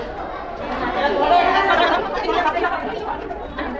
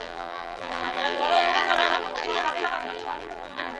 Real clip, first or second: first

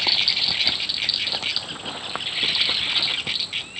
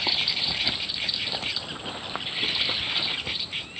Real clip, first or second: first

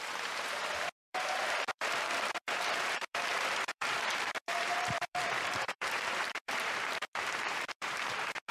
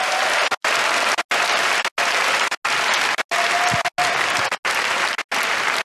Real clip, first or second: second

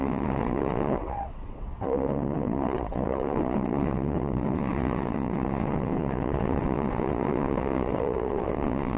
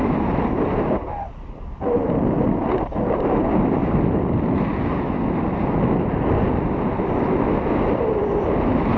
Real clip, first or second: second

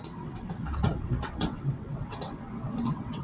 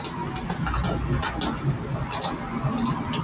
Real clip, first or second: second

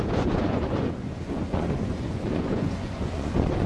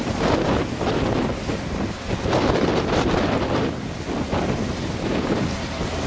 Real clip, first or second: second